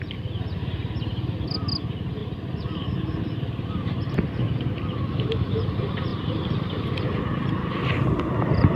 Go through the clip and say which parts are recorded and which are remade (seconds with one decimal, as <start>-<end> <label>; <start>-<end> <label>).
0.0-8.8 recorded